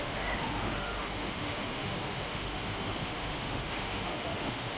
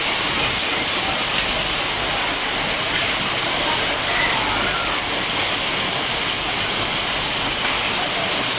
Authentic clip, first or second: second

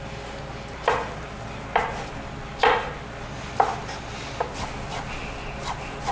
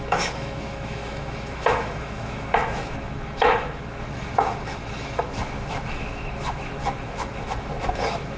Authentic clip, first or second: first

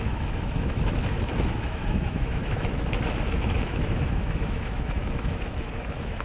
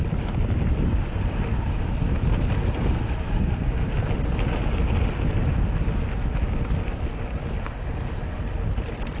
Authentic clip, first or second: second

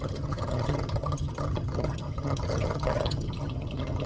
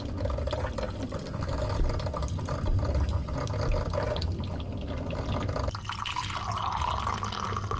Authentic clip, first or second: second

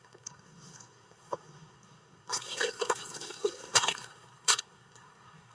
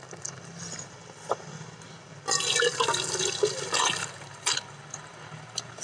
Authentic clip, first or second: second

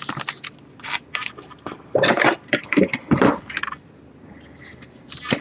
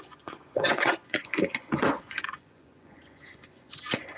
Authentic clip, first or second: first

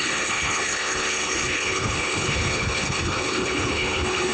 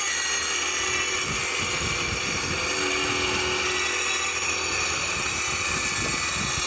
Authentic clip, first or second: second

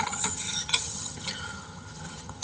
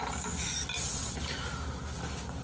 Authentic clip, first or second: second